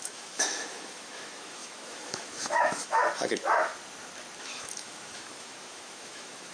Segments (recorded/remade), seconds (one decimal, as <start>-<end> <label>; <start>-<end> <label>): 0.0-3.7 remade; 3.7-4.4 recorded; 4.4-6.5 remade